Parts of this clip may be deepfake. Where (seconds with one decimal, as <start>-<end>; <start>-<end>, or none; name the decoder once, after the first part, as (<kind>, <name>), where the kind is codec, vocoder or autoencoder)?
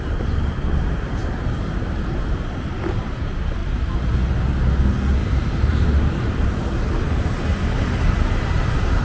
1.2-2.7 (vocoder, BigVGAN v2); 5.2-6.8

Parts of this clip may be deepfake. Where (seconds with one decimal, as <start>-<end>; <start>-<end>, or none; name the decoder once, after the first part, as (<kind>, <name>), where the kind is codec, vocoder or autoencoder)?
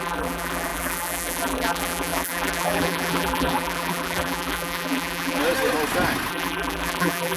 0.0-5.4 (vocoder, BigVGAN v2); 6.3-7.4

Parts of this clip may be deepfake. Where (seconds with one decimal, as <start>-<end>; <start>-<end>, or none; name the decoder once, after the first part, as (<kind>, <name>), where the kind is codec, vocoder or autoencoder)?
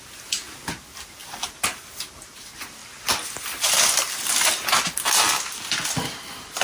1.2-1.8 (vocoder, BigVGAN v2)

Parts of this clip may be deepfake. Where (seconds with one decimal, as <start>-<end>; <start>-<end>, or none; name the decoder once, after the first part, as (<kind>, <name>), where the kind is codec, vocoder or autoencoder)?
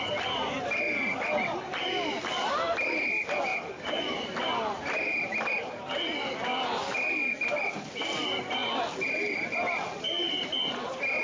none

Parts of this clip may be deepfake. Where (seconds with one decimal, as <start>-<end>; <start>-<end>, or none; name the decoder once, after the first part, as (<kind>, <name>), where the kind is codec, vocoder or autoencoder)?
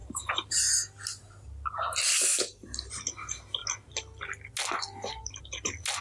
0.0-0.6 (vocoder, BigVGAN v2); 2.3-2.9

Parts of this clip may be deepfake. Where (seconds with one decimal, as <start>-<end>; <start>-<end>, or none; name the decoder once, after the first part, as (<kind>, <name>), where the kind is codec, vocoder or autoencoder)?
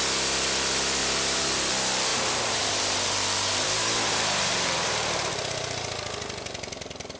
1.0-1.7 (vocoder, BigVGAN v2); 2.1-5.3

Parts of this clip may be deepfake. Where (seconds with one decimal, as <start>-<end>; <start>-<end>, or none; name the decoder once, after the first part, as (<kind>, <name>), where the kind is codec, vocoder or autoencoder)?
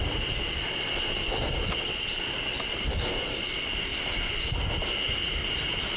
5.4-6.0 (vocoder, BigVGAN v2)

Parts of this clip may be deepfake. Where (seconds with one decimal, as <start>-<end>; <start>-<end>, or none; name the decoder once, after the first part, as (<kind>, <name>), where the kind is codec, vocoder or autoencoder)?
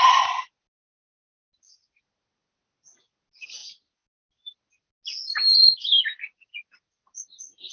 none